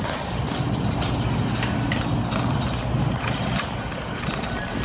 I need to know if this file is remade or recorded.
recorded